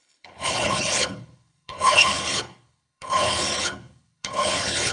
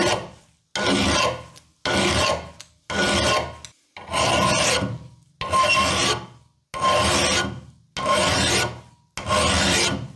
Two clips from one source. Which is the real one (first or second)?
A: second